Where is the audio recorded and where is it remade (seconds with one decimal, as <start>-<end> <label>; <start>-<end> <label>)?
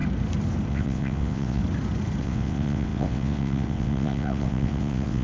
0.0-0.7 recorded; 0.7-1.6 remade; 1.6-2.2 recorded; 2.2-5.2 remade